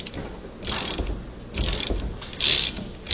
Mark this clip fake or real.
real